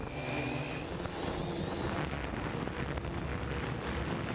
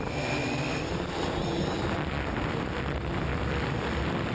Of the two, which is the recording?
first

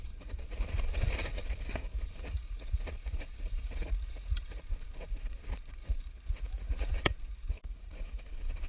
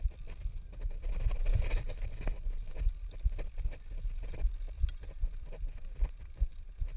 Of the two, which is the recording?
second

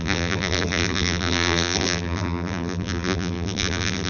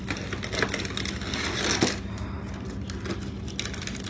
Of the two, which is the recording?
second